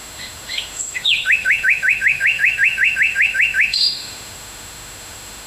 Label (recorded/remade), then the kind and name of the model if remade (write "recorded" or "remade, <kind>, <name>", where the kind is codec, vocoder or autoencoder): remade, autoencoder, DAC-VAE